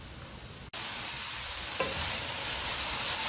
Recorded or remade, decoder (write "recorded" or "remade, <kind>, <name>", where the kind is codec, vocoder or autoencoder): recorded